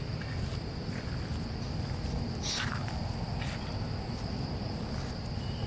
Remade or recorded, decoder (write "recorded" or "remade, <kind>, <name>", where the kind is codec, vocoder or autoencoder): recorded